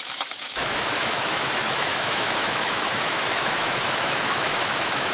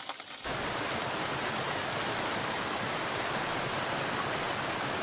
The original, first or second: second